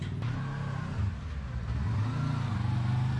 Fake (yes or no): no